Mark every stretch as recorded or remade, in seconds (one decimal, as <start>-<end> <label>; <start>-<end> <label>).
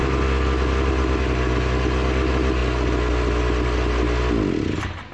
0.0-5.1 recorded